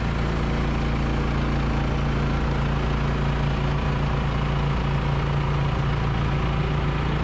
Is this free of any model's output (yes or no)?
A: yes